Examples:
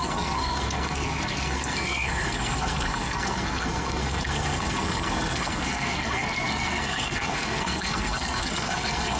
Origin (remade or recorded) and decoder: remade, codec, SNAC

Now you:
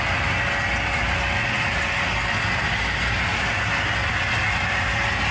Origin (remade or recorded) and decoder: recorded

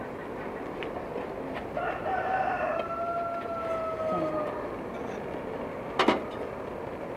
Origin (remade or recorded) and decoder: recorded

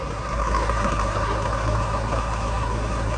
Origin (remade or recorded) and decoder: remade, codec, SNAC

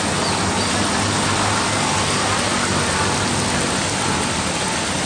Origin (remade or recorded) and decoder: recorded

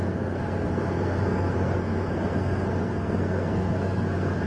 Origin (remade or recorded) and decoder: remade, codec, SNAC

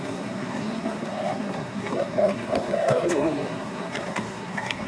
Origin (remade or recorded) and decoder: remade, codec, SNAC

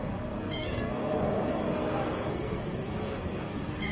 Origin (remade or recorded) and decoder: remade, codec, SNAC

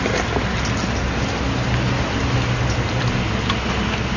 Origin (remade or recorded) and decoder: recorded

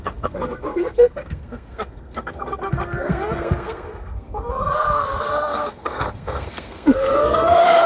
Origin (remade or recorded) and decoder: remade, codec, SNAC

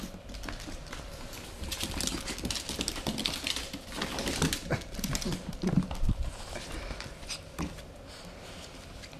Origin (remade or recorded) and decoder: recorded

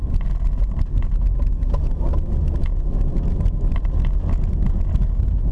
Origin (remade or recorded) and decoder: recorded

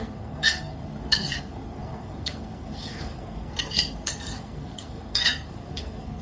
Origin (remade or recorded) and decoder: remade, codec, SNAC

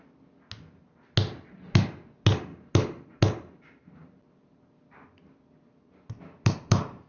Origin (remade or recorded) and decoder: recorded